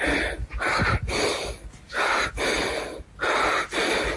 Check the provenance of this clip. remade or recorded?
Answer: remade